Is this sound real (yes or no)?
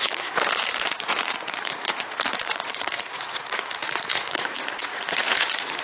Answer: no